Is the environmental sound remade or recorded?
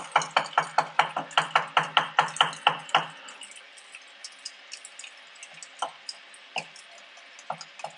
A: recorded